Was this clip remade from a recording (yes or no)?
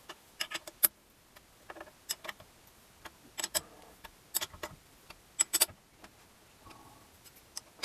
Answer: no